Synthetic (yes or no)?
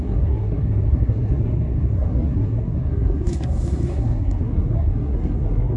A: yes